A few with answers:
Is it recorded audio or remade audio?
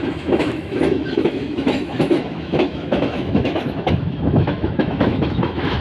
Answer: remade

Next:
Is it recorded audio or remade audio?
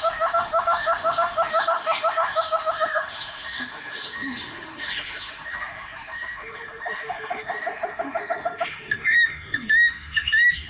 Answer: remade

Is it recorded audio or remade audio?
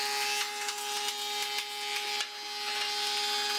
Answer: recorded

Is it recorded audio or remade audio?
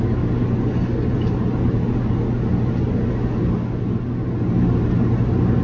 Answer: recorded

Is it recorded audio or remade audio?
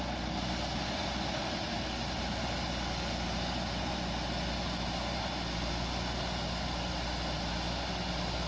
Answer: recorded